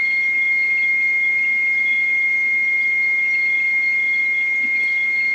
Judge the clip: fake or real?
real